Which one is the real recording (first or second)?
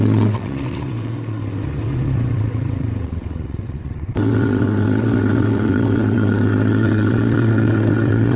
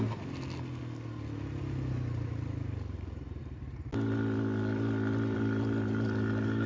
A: second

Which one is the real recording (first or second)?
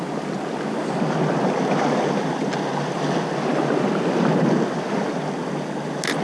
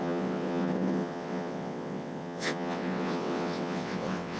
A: first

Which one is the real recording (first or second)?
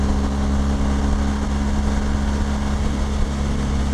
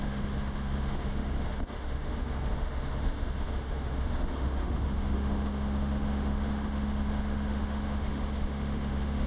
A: first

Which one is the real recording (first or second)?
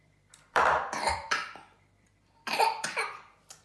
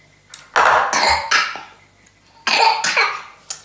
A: second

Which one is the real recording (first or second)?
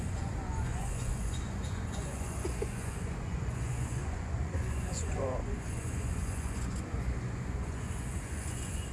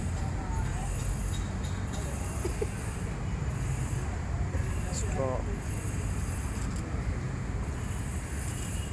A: second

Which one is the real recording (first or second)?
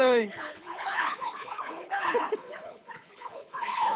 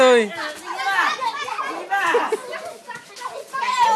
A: second